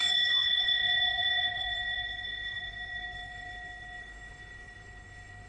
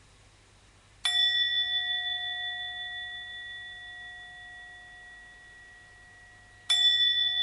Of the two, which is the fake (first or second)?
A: first